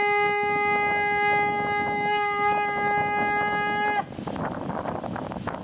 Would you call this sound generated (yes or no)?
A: no